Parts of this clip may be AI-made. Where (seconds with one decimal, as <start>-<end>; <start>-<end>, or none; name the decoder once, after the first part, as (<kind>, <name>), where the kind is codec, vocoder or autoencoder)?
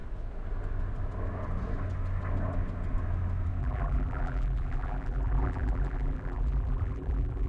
3.6-7.5 (vocoder, BigVGAN v2)